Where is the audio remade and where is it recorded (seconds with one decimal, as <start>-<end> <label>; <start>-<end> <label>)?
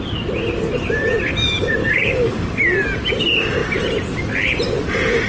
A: 0.0-1.8 recorded; 1.8-2.6 remade; 2.6-5.3 recorded